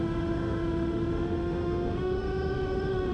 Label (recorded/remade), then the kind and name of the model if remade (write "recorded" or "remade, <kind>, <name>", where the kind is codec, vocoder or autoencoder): remade, autoencoder, DAC-VAE